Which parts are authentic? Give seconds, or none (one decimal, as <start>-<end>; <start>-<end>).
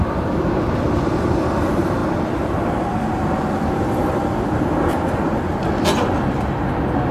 2.0-2.7